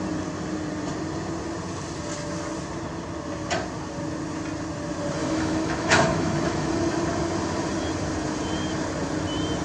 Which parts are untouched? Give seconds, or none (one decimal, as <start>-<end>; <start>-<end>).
0.0-5.2; 6.7-9.6